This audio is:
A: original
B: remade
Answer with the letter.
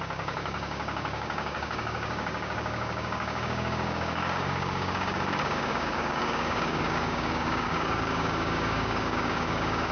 B